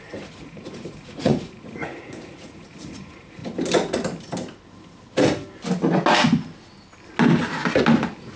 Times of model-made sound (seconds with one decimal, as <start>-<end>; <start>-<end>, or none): 0.0-3.4